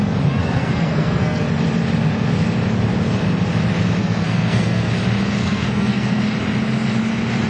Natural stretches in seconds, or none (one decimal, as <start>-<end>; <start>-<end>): 0.0-0.4; 1.4-4.0; 4.9-5.4; 6.2-7.5